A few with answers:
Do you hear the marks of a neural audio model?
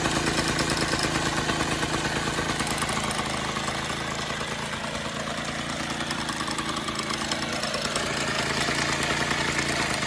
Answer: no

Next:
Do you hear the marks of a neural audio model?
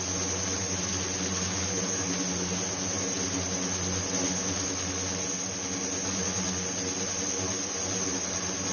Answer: no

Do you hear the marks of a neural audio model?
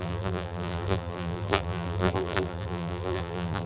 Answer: yes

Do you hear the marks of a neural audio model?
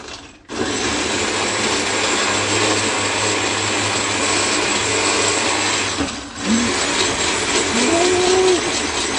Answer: no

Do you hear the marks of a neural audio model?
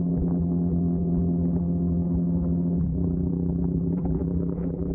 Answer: yes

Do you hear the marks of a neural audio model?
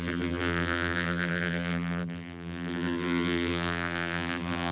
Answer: yes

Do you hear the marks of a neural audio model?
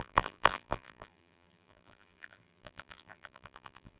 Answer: yes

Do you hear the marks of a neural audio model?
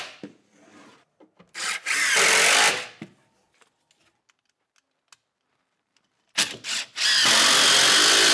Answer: no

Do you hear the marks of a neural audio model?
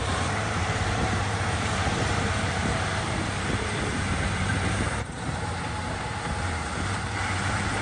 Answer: yes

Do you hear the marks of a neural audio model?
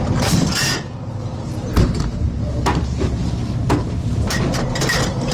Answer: yes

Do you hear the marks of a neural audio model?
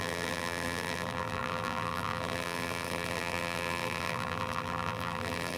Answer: yes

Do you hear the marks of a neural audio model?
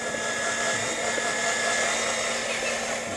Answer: no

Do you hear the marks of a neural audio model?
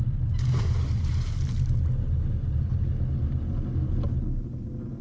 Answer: no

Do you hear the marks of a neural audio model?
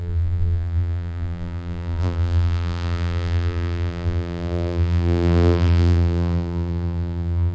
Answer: yes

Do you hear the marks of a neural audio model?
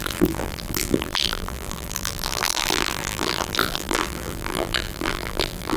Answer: yes